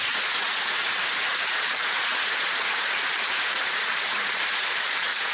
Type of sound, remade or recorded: remade